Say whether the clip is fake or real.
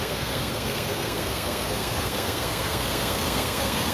fake